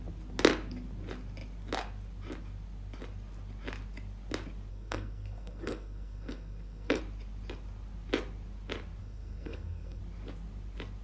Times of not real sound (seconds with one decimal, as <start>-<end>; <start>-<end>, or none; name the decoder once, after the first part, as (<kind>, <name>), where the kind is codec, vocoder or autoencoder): 4.7-7.0 (codec, SNAC); 9.0-10.0